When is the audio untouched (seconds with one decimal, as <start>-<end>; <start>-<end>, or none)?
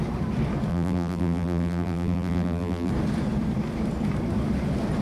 0.0-0.7; 2.9-5.0